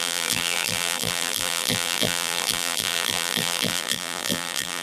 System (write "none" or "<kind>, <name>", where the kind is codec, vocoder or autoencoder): vocoder, BigVGAN v2